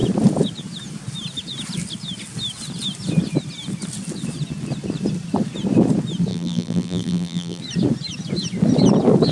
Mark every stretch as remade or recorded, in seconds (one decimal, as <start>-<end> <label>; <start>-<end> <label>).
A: 0.0-6.3 recorded; 6.3-7.6 remade; 7.6-9.3 recorded